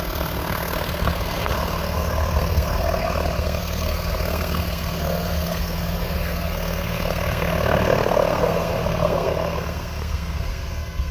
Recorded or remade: remade